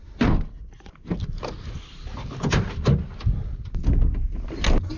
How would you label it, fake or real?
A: real